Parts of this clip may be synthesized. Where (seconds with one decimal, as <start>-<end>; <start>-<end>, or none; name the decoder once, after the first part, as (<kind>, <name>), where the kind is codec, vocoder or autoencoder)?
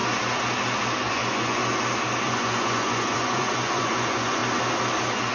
1.1-1.6 (vocoder, Vocos); 2.2-4.4